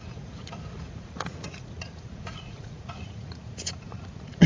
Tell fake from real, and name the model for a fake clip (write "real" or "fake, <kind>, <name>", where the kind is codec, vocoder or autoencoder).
fake, vocoder, Vocos